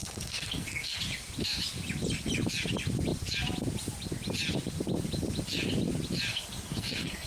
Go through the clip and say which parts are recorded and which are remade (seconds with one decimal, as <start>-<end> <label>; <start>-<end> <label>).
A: 0.0-1.0 remade; 1.0-6.3 recorded; 6.3-7.3 remade